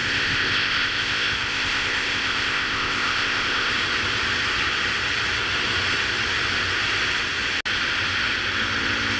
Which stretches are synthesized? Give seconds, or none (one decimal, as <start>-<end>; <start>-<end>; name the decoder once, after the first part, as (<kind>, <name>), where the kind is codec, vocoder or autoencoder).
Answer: 0.0-3.7 (codec, ZipCodec)